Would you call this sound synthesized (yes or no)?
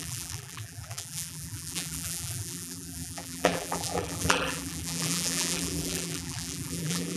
yes